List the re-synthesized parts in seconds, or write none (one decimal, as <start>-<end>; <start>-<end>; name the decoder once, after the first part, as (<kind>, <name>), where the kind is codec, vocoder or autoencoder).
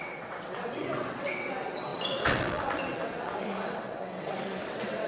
0.0-5.1 (vocoder, WaveNeXt)